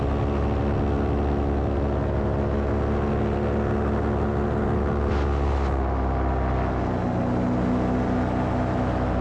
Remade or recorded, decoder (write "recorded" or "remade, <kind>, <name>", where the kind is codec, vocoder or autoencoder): recorded